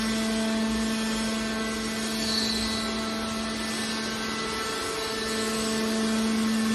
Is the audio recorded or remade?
recorded